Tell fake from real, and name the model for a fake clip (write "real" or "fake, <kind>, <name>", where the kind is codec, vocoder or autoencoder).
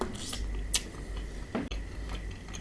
real